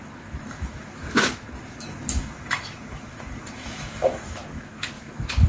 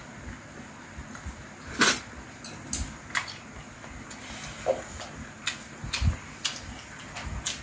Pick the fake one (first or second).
first